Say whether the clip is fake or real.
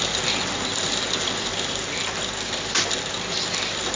real